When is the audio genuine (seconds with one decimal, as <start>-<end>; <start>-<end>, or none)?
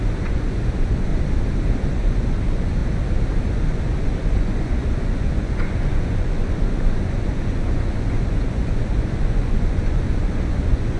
1.1-1.9; 2.8-3.4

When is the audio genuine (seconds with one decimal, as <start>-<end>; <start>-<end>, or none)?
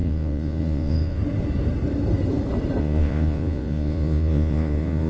1.2-2.8